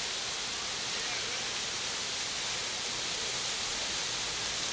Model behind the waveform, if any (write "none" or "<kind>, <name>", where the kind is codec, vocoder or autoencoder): none